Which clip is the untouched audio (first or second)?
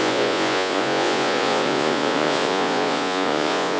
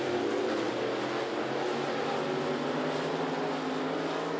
second